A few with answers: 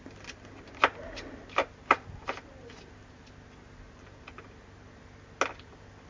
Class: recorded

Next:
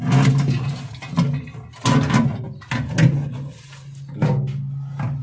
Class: recorded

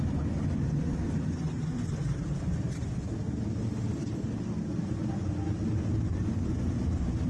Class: recorded